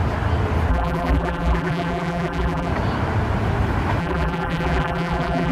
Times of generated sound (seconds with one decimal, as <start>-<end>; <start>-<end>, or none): 0.7-2.7; 4.0-5.5